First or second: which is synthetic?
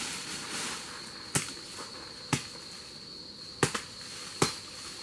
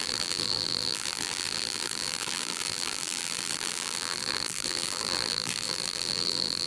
second